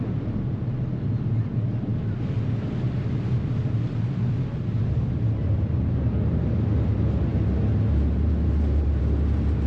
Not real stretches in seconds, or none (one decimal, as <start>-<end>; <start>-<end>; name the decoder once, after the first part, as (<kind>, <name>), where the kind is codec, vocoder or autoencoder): none